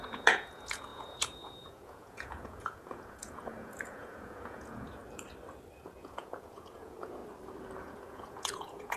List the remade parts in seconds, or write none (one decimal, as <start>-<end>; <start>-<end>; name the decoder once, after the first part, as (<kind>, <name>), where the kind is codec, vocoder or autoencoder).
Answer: 0.0-5.0 (vocoder, Vocos); 6.0-7.2; 7.8-9.0